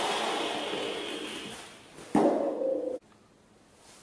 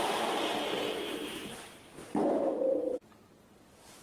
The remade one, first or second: second